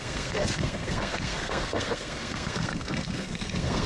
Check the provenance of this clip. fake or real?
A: fake